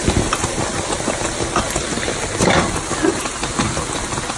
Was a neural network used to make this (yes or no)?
no